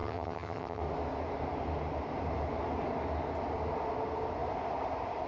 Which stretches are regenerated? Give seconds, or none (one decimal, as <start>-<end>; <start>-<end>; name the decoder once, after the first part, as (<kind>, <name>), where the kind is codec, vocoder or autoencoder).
0.0-0.8 (vocoder, HiFi-GAN)